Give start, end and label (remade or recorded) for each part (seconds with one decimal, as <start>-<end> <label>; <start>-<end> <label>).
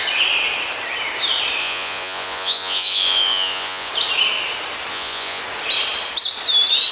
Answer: 0.0-1.6 recorded; 1.6-3.9 remade; 3.9-4.9 recorded; 4.9-5.4 remade; 5.4-6.9 recorded